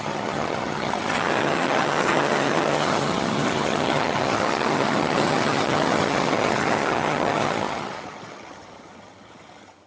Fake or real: fake